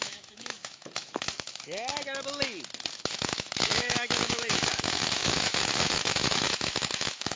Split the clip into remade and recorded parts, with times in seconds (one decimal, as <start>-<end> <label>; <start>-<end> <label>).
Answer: 0.0-1.9 remade; 1.9-2.9 recorded; 2.9-7.4 remade

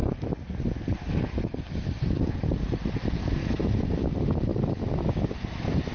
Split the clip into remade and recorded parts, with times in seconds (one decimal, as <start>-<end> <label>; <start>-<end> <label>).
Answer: 0.0-4.5 recorded; 4.5-5.3 remade; 5.3-5.9 recorded

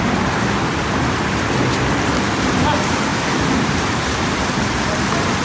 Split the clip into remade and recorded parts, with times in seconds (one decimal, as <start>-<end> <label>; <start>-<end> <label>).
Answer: 0.0-3.1 recorded; 3.1-4.8 remade; 4.8-5.4 recorded

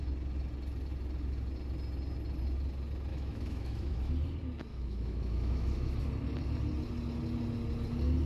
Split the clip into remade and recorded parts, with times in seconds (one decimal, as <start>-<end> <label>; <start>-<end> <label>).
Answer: 0.0-3.1 recorded; 3.1-4.1 remade; 4.1-4.7 recorded; 4.7-6.0 remade; 6.0-8.3 recorded

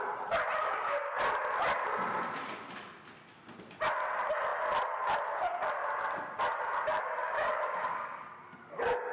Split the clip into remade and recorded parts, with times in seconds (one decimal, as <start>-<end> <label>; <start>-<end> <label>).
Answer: 0.0-0.6 recorded; 0.6-1.2 remade; 1.2-7.2 recorded; 7.2-8.2 remade; 8.2-9.1 recorded

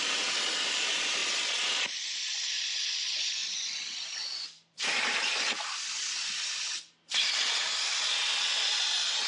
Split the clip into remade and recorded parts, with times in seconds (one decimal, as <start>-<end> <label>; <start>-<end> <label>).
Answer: 0.0-3.4 recorded; 3.4-4.9 remade; 4.9-9.3 recorded

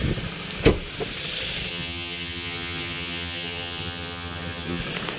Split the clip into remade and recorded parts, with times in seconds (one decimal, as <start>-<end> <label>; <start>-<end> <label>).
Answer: 0.0-1.7 recorded; 1.7-4.8 remade; 4.8-5.2 recorded